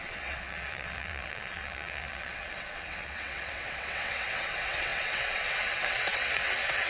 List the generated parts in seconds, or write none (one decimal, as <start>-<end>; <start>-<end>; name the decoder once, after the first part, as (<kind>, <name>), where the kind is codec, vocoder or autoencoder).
0.0-6.9 (vocoder, WaveNeXt)